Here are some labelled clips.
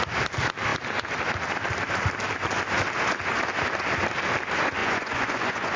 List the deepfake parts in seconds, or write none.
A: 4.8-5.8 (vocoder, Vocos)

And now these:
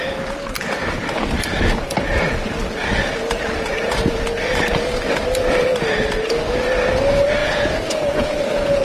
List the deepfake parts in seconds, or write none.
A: 7.4-8.8 (vocoder, Vocos)

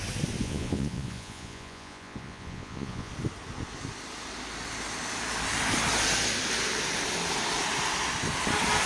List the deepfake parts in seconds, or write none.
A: 0.4-3.1 (vocoder, Vocos)

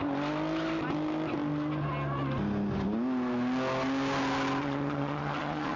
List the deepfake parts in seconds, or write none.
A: 4.6-5.8 (vocoder, Vocos)